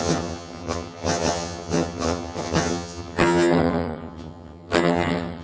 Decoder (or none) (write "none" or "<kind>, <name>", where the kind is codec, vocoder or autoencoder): vocoder, HiFi-GAN